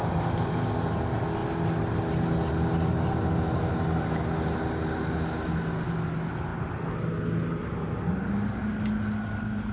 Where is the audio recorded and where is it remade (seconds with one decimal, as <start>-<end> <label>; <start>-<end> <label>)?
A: 0.0-9.7 recorded